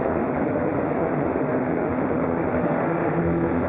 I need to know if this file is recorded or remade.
remade